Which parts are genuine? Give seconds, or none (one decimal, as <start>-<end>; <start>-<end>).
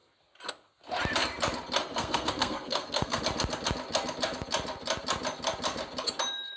0.0-1.8; 3.2-6.6